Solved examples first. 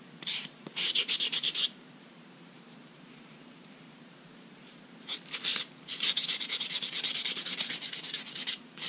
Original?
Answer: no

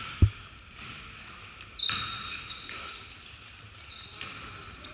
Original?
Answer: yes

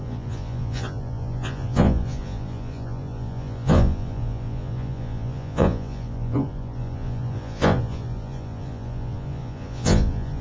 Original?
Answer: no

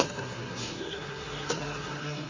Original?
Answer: no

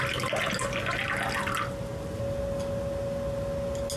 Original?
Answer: yes